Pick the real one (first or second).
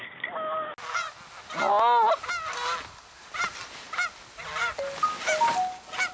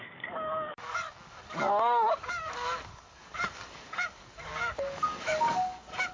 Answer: first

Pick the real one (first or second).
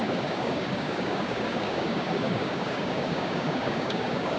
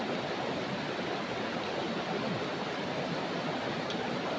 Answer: second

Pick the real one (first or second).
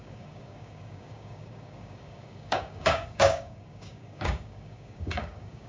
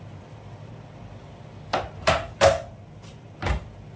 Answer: second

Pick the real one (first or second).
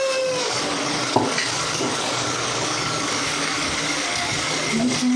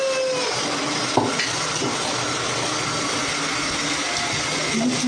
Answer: second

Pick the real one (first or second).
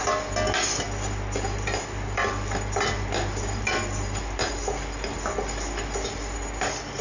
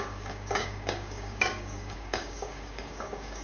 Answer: first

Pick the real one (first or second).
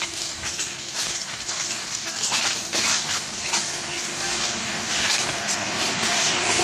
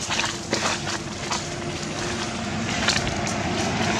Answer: second